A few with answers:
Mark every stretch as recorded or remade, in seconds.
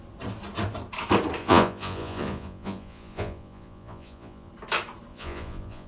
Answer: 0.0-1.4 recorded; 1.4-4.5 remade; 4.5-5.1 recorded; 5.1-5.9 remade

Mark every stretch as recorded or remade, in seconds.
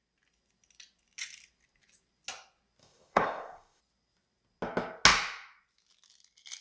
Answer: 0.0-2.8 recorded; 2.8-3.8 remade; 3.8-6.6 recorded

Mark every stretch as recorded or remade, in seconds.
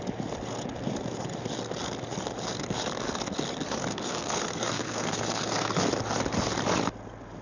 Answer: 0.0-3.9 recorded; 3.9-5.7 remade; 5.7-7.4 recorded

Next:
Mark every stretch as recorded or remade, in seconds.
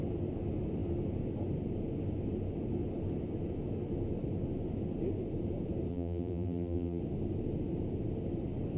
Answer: 0.0-5.9 recorded; 5.9-7.0 remade; 7.0-8.8 recorded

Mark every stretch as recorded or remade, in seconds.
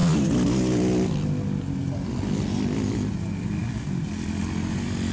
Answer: 0.0-5.1 recorded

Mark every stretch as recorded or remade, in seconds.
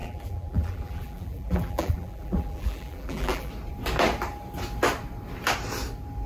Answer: 0.0-3.5 remade; 3.5-6.3 recorded